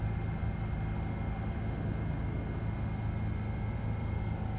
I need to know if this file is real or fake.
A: real